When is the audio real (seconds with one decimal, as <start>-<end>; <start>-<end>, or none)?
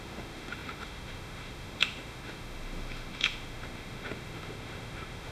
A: none